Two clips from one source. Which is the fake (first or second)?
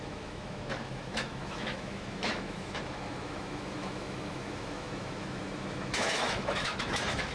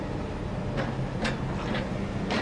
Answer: first